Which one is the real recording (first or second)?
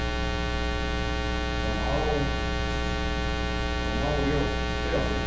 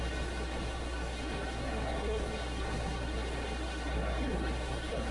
first